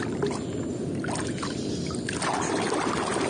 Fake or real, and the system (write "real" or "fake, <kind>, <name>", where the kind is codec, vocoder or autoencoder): real